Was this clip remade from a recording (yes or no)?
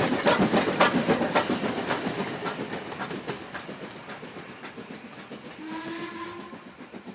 no